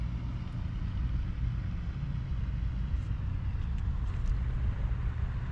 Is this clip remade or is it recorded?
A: recorded